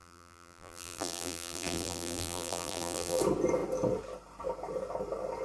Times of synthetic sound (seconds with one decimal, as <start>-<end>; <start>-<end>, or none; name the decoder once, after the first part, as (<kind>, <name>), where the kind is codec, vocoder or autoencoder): 0.0-3.2 (vocoder, BigVGAN v2)